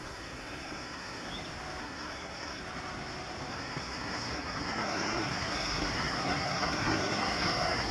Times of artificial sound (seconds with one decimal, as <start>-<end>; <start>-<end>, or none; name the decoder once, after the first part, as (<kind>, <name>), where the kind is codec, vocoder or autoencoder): 0.0-1.3 (codec, SNAC); 1.8-2.6; 3.5-7.9